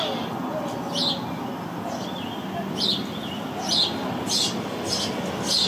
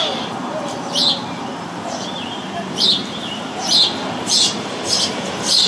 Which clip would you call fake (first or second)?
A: second